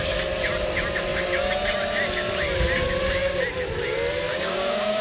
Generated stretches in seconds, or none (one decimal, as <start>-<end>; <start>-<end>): 4.3-5.0